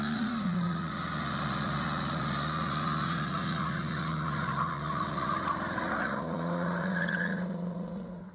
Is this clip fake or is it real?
fake